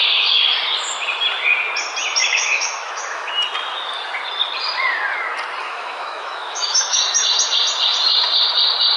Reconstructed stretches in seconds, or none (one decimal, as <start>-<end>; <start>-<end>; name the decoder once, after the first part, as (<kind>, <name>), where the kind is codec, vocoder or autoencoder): 2.2-3.3 (autoencoder, DAC-VAE); 5.6-7.0